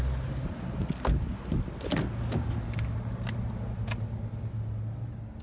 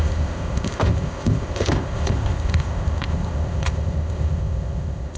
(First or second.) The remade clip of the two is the second